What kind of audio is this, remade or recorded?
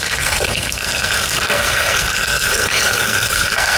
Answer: remade